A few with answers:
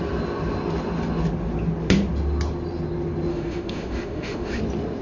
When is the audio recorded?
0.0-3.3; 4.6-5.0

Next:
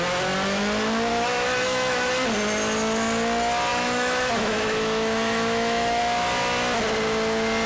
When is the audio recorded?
0.0-1.1; 2.1-3.7; 6.0-7.7

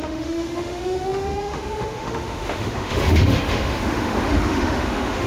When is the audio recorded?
none

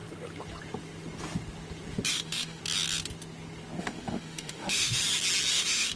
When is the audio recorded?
0.0-2.1; 2.6-3.8; 5.0-5.5

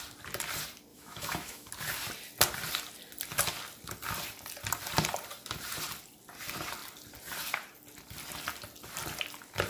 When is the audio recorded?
0.0-0.9; 1.7-9.7